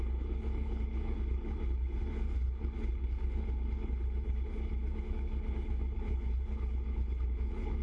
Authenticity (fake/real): fake